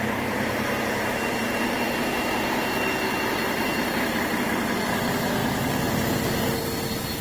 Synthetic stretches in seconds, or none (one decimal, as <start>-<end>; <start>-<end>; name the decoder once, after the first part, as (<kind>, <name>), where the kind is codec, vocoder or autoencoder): none